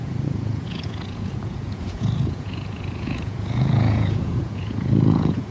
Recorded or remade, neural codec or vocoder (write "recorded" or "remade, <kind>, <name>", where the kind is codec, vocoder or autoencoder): remade, vocoder, Vocos